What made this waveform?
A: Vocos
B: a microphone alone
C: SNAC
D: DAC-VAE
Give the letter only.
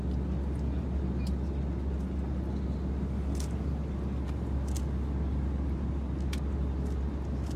B